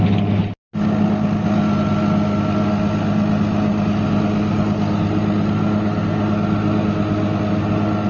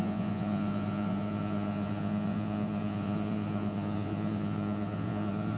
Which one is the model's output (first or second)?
second